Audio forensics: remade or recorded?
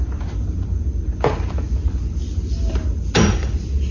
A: recorded